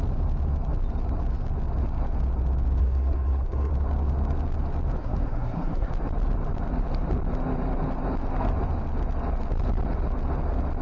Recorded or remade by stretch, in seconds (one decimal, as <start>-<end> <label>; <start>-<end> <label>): 0.0-2.8 recorded; 2.8-3.7 remade; 3.7-5.0 recorded; 5.0-5.9 remade; 5.9-10.8 recorded